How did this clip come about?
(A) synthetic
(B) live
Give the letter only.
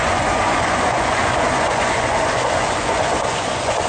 A